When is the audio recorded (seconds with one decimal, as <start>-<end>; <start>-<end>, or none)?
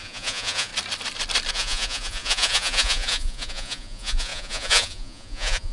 0.7-1.5